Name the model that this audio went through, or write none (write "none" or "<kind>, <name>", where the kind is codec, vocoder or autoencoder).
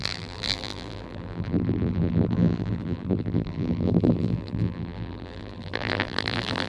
vocoder, BigVGAN v2